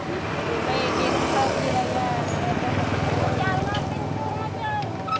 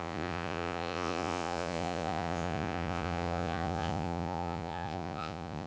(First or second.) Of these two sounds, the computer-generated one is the second